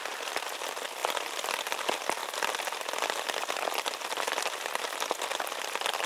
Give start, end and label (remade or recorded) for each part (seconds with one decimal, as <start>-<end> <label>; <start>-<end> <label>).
0.0-6.1 recorded